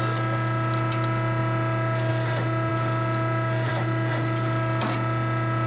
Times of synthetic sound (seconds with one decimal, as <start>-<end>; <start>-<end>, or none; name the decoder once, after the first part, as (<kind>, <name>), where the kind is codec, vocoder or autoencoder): none